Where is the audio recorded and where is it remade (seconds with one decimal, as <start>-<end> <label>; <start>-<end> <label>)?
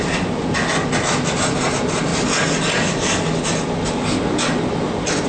0.0-5.3 recorded